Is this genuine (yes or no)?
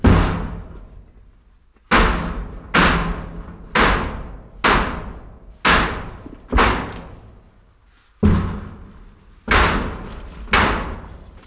yes